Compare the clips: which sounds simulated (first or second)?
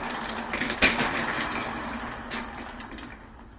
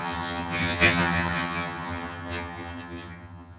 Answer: second